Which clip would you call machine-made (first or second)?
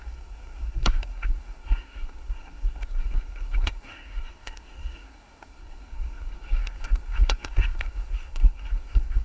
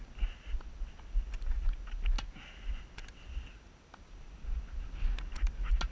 first